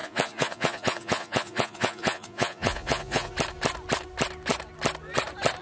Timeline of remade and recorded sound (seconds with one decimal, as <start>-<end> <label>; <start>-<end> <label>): 0.0-3.3 remade; 3.3-5.6 recorded